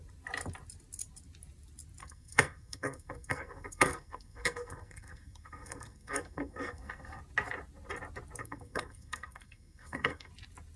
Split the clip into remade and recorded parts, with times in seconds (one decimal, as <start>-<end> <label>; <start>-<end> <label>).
0.0-2.0 recorded; 2.0-7.2 remade; 7.2-8.4 recorded; 8.4-10.3 remade; 10.3-10.8 recorded